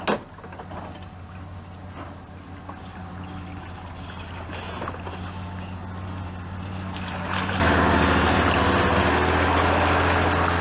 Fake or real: real